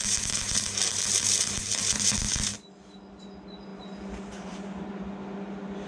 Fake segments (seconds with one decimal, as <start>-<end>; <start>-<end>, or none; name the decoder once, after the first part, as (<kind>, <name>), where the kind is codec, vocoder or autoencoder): none